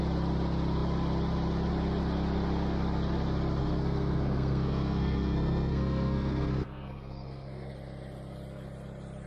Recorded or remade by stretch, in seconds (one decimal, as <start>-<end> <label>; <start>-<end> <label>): 0.0-3.6 recorded; 3.6-7.7 remade; 7.7-9.3 recorded